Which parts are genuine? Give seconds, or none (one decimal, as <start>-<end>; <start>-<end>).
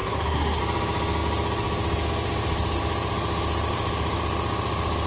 0.6-5.1